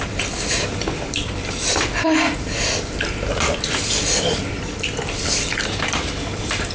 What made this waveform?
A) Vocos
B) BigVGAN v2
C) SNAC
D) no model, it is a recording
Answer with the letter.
B